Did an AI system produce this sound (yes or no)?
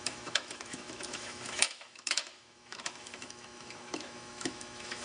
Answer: yes